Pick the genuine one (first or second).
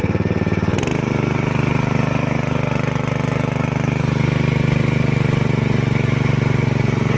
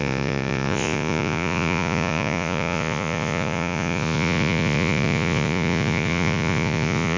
first